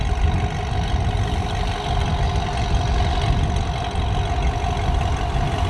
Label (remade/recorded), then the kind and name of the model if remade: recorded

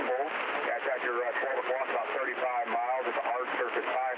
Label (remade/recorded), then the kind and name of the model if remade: recorded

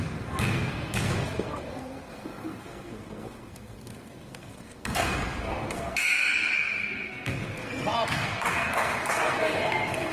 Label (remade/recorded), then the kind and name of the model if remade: remade, codec, SNAC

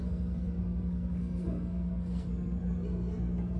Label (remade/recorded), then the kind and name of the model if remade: remade, codec, SNAC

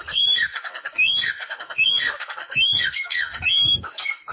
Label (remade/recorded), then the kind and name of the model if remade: remade, codec, SNAC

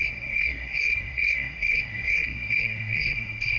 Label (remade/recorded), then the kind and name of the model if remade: remade, codec, SNAC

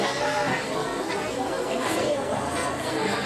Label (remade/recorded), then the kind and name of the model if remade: remade, codec, SNAC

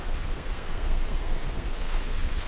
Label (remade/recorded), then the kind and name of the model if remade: remade, codec, SNAC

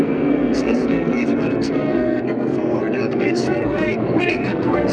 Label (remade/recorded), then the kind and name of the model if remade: remade, codec, SNAC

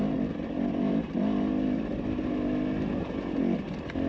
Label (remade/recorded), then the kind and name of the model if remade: recorded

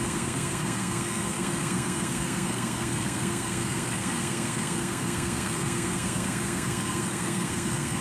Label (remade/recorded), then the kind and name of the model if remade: remade, codec, SNAC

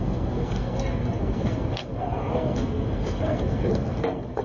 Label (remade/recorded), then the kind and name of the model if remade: remade, codec, SNAC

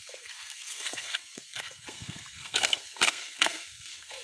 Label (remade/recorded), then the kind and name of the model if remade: remade, codec, SNAC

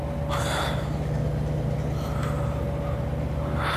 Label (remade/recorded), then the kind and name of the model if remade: recorded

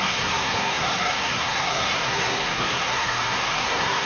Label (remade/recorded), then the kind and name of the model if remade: remade, codec, SNAC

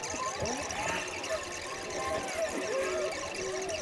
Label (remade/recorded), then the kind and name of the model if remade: recorded